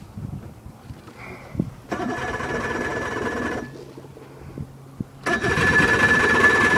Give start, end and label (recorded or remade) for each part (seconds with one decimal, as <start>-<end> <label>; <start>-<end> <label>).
0.0-2.9 remade; 2.9-6.8 recorded